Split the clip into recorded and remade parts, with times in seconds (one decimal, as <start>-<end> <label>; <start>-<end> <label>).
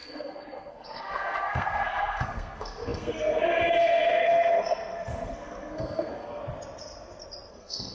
0.0-6.4 remade; 6.4-7.5 recorded; 7.5-7.9 remade